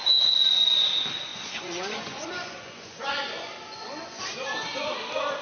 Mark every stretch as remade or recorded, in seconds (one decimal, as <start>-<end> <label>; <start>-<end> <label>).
0.0-1.3 recorded; 1.3-4.2 remade; 4.2-5.4 recorded